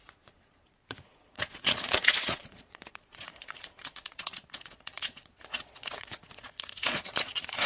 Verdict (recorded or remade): remade